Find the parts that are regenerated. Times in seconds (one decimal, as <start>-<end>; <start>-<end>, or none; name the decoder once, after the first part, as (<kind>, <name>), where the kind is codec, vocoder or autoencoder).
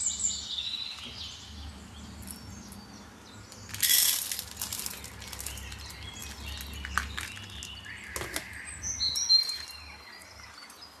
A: none